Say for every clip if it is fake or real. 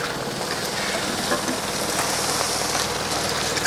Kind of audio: real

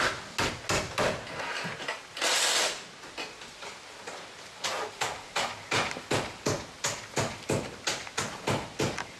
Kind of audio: real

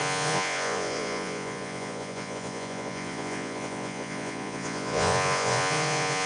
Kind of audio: fake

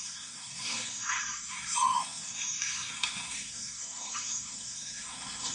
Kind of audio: fake